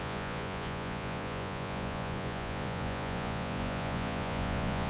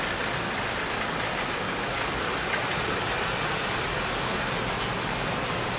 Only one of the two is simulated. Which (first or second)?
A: first